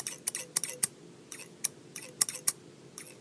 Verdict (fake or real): real